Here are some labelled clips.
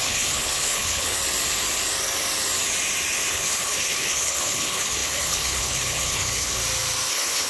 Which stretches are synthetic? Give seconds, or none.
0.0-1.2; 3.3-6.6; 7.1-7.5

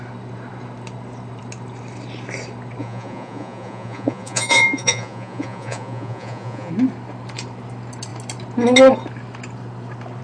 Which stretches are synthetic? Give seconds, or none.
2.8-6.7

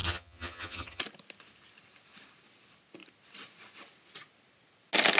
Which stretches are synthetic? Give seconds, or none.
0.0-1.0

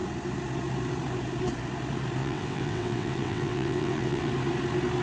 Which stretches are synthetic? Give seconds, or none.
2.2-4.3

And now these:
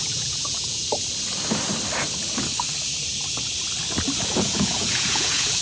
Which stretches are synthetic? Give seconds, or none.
0.0-0.8; 4.2-5.6

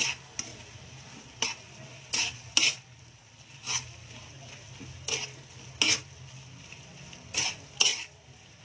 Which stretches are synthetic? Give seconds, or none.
7.9-8.6